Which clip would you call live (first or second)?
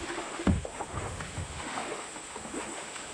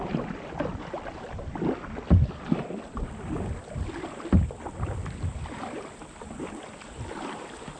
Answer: second